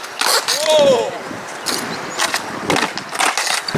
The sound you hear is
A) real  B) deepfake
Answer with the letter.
A